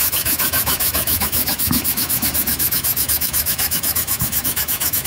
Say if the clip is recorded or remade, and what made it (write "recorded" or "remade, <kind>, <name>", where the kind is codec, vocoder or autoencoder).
remade, autoencoder, DAC-VAE